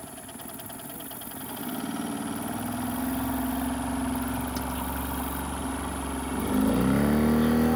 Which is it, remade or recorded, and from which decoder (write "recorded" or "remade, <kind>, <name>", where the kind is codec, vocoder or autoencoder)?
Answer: recorded